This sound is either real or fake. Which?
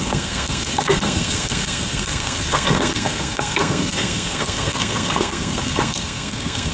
fake